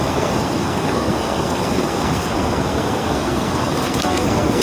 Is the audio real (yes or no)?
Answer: no